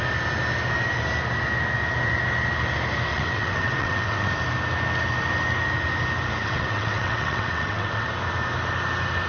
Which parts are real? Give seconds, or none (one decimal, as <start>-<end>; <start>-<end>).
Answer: 0.0-3.1; 4.3-6.4; 8.1-9.3